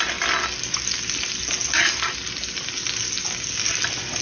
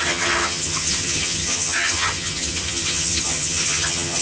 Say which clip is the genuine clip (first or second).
first